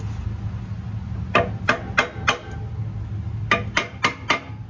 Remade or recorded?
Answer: recorded